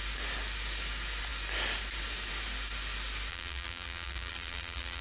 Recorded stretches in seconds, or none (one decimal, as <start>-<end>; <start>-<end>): 0.0-3.3